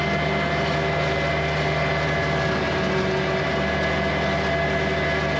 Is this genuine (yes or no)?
yes